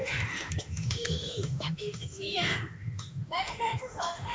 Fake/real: fake